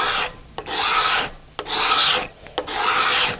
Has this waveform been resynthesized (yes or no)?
no